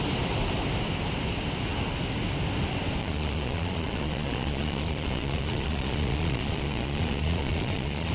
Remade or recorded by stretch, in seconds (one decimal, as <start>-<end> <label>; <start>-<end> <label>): 0.0-3.0 recorded; 3.0-8.1 remade